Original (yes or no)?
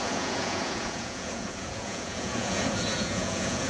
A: no